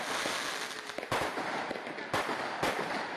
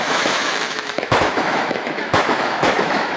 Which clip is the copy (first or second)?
second